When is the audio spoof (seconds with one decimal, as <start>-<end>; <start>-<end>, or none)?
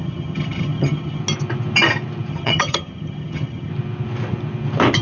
0.0-1.2; 2.3-3.7